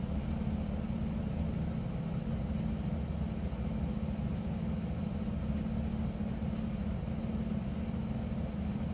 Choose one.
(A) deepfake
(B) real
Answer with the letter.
B